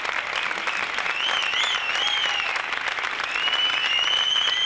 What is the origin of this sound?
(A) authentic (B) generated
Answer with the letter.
A